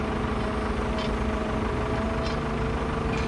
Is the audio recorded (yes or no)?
yes